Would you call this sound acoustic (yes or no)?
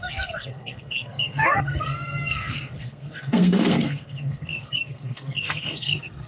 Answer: no